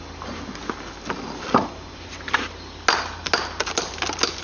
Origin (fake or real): real